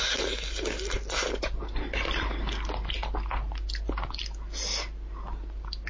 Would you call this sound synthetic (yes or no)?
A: no